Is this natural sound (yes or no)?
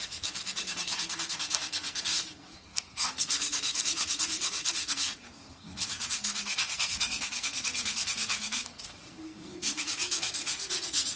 no